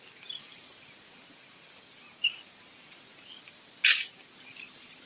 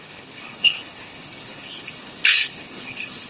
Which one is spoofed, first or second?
second